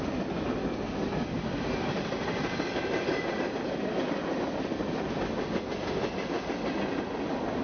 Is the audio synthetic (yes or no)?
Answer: no